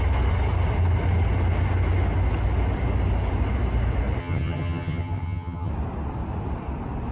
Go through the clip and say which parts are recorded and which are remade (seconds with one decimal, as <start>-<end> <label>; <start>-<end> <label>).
0.0-4.2 recorded; 4.2-5.7 remade; 5.7-7.1 recorded